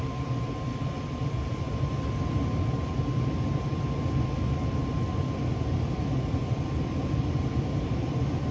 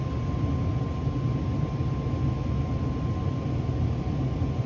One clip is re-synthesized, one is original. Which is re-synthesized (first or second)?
first